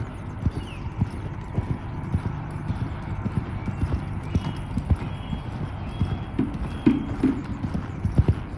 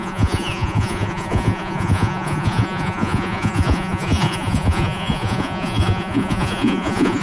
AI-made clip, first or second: second